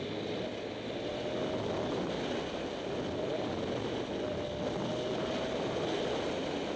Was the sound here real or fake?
real